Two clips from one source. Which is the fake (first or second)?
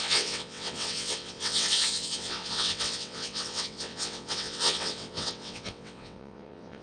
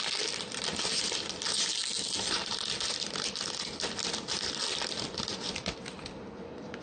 first